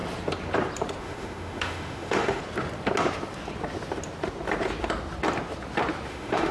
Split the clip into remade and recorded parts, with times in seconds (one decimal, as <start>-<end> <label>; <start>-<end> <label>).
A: 0.0-1.0 recorded; 1.0-2.4 remade; 2.4-6.1 recorded; 6.1-6.5 remade